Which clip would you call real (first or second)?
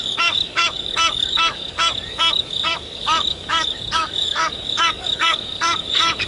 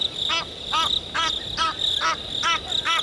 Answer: second